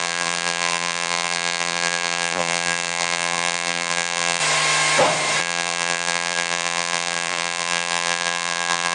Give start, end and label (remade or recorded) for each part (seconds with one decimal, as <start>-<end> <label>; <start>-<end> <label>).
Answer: 0.0-4.4 remade; 4.4-5.4 recorded; 5.4-8.9 remade